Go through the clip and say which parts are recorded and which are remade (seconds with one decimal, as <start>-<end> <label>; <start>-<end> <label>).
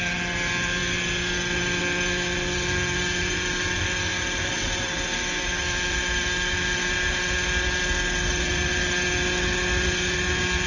0.0-10.7 recorded